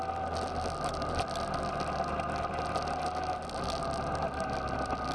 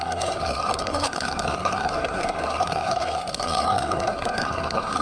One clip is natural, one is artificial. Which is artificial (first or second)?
second